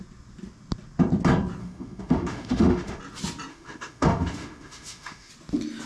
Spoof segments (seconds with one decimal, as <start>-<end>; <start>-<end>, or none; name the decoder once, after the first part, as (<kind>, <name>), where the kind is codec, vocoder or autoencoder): 1.6-3.0 (autoencoder, DAC-VAE); 3.5-5.3